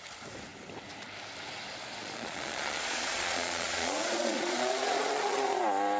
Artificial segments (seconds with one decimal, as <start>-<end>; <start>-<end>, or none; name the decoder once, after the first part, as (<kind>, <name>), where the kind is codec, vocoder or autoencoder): 2.0-5.6 (vocoder, Vocos)